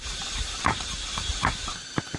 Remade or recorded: remade